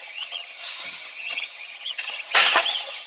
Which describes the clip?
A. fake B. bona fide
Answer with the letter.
A